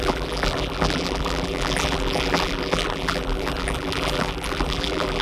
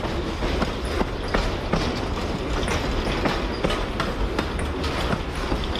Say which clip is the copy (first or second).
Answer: first